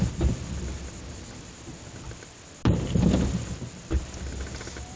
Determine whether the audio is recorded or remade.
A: recorded